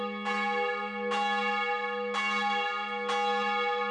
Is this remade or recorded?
recorded